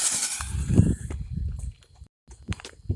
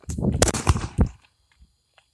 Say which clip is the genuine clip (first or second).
first